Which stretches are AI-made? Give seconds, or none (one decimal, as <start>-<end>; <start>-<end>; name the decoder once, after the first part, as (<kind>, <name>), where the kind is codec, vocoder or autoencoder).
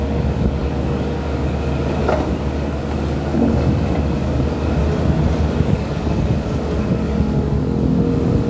0.0-4.8 (codec, DAC); 5.6-8.5